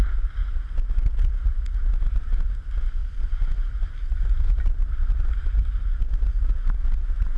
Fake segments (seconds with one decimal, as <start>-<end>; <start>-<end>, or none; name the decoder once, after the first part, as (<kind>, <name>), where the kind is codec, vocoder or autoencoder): 3.0-6.0 (vocoder, BigVGAN v2)